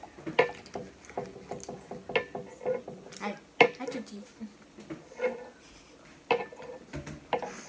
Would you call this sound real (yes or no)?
yes